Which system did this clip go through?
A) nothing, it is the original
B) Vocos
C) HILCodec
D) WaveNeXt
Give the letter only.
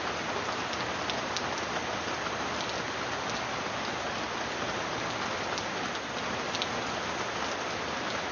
A